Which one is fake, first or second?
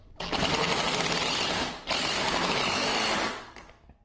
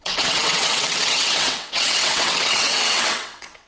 second